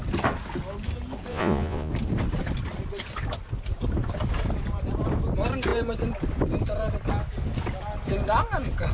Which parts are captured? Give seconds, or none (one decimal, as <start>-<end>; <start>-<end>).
0.0-1.3; 1.9-8.9